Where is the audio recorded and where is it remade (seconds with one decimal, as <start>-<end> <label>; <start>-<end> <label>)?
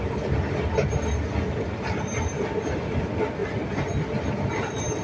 0.0-5.0 recorded